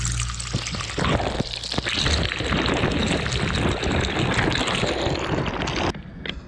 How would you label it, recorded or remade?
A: recorded